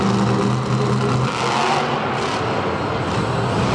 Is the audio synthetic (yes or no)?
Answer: no